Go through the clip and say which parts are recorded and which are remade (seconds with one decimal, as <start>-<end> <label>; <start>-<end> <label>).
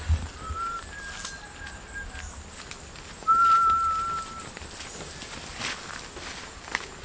0.0-7.0 recorded